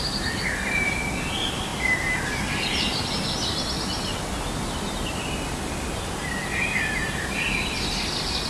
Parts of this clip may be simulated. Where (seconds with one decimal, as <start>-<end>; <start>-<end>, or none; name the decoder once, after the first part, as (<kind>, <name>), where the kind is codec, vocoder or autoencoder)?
none